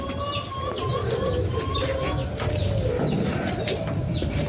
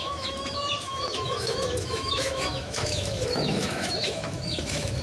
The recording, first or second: first